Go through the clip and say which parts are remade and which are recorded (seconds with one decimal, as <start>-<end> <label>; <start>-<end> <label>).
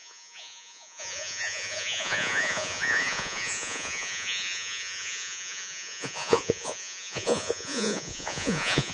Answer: 0.0-8.9 remade